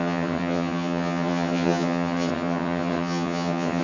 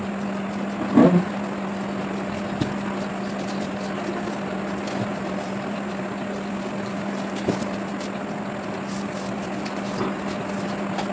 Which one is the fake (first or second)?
first